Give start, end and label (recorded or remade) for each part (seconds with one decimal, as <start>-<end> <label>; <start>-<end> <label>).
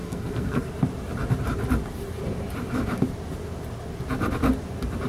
0.0-0.7 remade; 0.7-5.1 recorded